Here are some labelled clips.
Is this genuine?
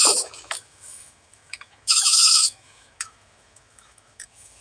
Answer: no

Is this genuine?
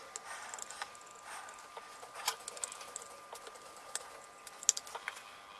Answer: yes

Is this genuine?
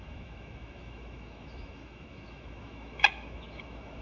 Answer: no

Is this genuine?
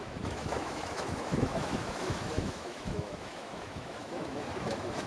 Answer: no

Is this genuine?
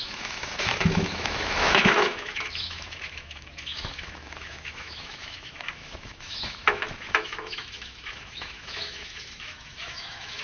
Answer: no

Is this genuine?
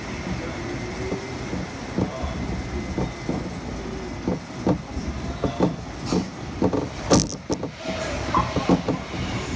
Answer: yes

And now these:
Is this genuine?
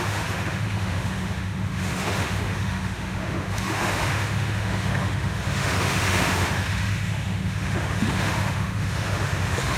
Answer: no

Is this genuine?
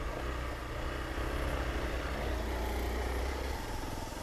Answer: yes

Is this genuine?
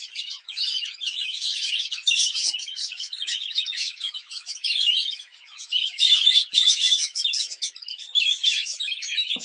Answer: no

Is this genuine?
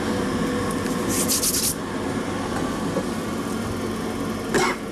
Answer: yes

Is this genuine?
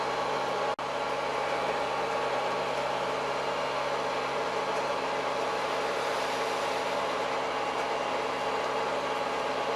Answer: yes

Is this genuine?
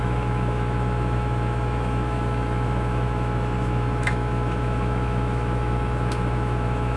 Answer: no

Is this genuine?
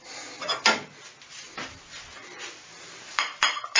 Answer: yes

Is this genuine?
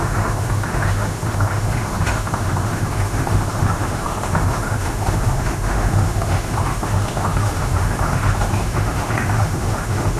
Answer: no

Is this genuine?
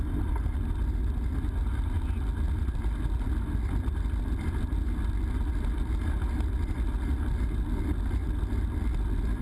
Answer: yes